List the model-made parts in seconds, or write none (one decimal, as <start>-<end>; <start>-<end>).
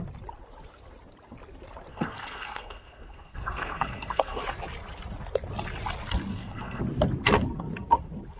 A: 1.9-4.4; 6.3-6.8